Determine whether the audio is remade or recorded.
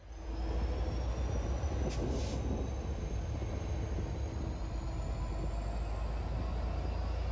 recorded